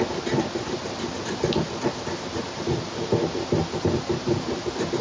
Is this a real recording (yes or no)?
yes